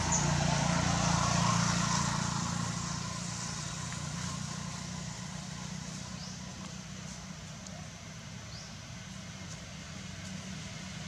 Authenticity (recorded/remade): recorded